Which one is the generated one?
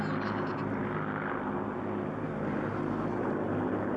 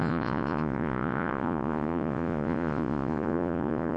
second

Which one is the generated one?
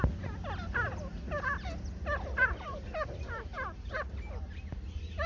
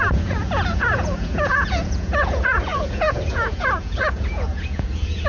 second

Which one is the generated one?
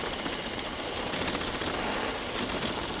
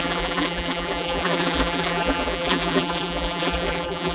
second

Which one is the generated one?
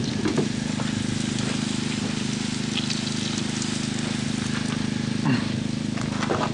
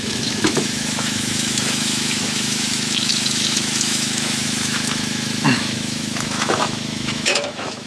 second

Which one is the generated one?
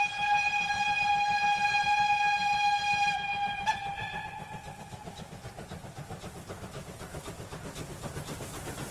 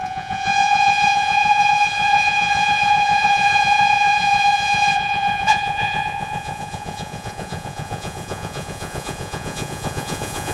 second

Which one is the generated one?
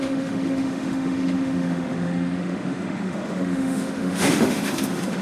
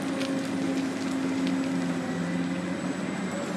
first